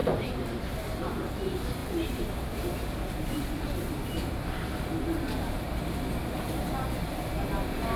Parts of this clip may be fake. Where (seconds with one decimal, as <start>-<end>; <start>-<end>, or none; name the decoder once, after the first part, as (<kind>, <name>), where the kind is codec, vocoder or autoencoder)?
0.0-0.6 (vocoder, BigVGAN v2); 1.8-6.6